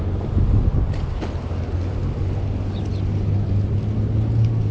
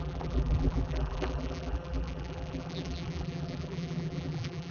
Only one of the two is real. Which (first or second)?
first